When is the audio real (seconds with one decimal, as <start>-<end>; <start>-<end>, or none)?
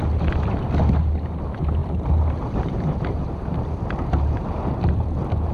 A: 0.0-1.8; 5.1-5.5